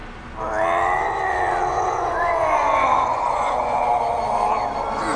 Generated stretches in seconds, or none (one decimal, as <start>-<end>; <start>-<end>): 1.7-3.9